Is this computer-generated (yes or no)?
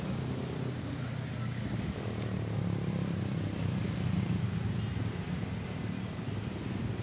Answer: no